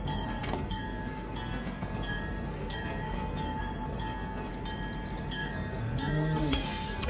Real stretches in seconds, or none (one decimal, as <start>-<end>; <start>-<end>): 4.5-5.2